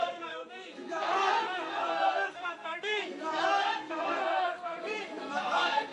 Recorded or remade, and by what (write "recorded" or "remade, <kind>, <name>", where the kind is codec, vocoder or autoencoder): remade, codec, SNAC